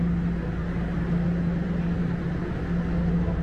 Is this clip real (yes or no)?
yes